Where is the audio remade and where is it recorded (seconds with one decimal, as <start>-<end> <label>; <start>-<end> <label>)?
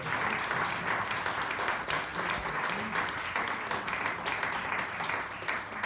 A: 0.0-5.9 recorded